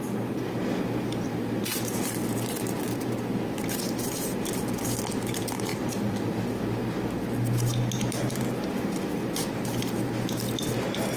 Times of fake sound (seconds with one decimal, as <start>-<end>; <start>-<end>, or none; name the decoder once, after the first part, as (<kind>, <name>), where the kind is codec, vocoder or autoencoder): 1.7-3.0 (vocoder, BigVGAN v2); 5.7-6.6